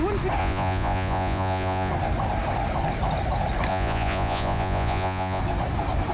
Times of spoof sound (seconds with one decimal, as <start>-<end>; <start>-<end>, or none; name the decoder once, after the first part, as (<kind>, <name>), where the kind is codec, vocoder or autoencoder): 0.4-1.9 (vocoder, Vocos); 3.7-5.4